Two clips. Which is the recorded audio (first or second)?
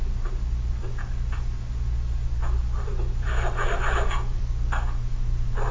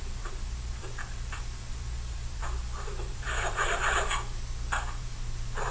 first